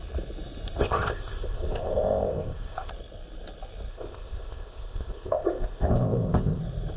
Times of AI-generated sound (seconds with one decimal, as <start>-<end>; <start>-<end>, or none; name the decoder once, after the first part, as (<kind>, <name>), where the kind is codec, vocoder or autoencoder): 0.8-2.9 (codec, ZipCodec); 3.9-6.6